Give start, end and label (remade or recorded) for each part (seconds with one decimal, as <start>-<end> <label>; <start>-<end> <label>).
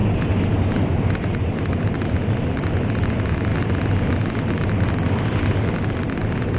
0.0-2.7 remade; 2.7-6.6 recorded